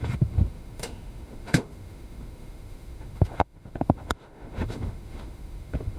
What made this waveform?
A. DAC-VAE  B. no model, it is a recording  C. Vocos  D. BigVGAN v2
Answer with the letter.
A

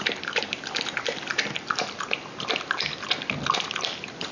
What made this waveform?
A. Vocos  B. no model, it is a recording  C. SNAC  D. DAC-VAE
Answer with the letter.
B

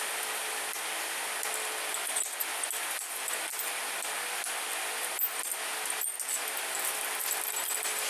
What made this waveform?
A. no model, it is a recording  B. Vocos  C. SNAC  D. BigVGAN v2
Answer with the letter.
A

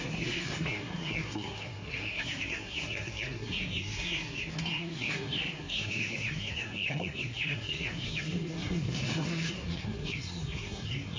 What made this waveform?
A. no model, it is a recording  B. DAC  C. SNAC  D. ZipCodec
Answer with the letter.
C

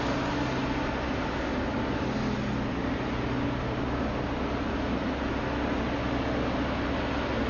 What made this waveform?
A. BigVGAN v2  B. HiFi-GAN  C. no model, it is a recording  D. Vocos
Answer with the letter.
C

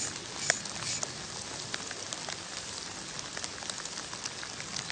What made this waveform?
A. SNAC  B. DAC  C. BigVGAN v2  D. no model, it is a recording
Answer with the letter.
D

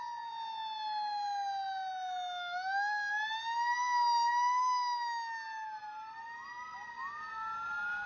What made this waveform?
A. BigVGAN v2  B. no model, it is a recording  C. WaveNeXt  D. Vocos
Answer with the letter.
B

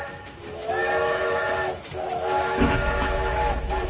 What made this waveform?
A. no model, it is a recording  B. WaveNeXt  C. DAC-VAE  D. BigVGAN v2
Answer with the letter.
C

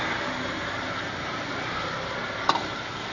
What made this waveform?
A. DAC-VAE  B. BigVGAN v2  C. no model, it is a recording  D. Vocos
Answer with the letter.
C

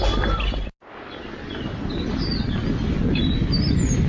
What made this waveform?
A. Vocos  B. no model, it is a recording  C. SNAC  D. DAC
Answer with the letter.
B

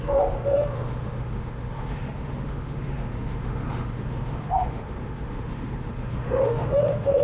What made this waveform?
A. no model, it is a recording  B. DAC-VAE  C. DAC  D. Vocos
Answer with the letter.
B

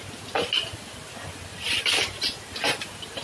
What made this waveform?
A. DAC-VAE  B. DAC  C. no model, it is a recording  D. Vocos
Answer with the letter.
C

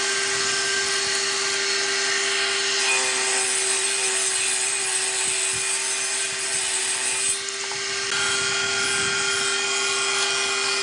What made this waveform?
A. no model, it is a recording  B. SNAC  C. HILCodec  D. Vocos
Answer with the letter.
A